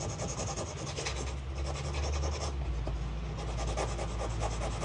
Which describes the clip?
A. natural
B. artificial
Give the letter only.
A